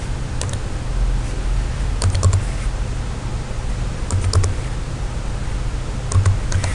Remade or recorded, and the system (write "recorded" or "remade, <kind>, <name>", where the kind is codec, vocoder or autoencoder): recorded